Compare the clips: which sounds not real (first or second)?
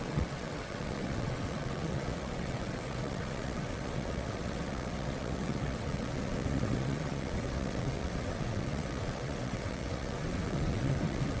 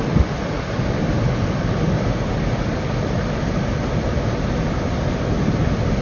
first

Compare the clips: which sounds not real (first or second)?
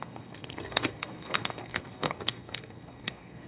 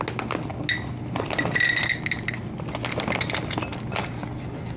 first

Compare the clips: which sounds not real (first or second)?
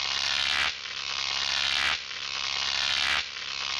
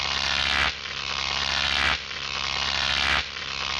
second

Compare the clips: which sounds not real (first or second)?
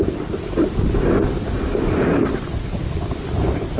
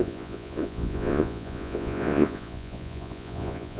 second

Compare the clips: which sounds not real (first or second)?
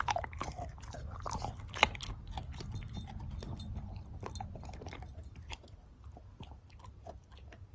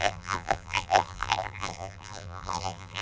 second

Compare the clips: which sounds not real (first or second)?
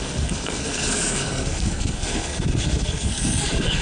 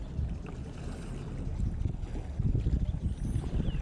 first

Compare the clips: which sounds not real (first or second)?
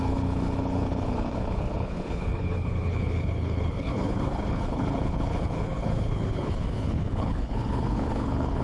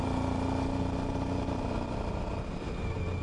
first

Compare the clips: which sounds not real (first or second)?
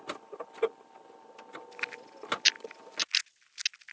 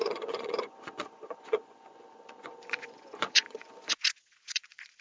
second